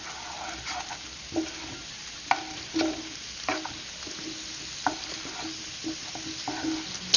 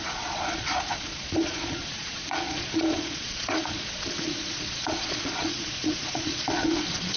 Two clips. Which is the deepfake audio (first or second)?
second